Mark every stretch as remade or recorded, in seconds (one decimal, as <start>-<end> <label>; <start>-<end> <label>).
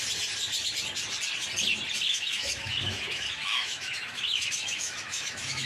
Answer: 0.0-2.0 recorded; 2.0-5.7 remade